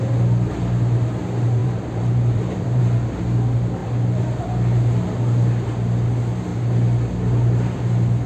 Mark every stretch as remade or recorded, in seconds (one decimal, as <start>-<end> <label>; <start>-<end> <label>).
0.0-1.6 recorded; 1.6-2.8 remade; 2.8-3.8 recorded; 3.8-4.4 remade; 4.4-8.3 recorded